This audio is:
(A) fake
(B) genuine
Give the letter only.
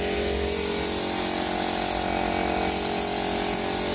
B